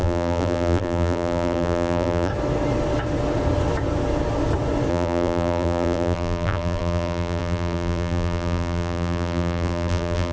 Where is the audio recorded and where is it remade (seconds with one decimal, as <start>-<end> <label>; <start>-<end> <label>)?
0.0-2.3 remade; 2.3-4.9 recorded; 4.9-10.3 remade